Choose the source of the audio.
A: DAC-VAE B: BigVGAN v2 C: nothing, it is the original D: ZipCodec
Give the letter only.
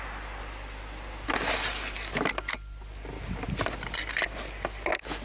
C